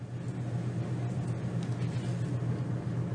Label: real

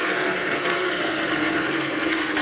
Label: fake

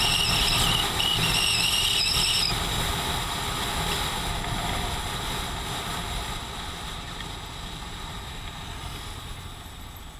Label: real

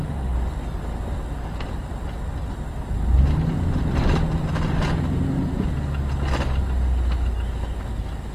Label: real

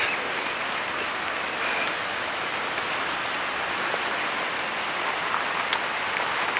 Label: real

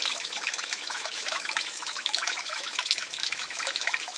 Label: fake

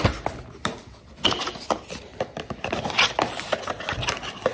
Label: real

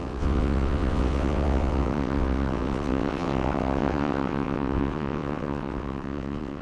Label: fake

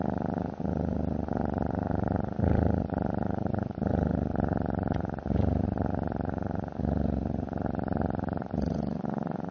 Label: fake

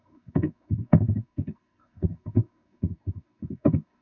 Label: fake